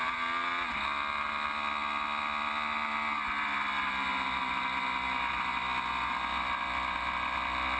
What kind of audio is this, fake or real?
real